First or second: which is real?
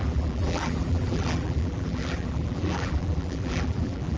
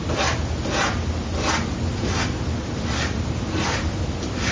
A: second